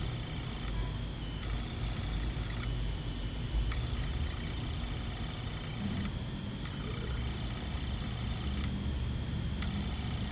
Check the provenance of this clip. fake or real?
real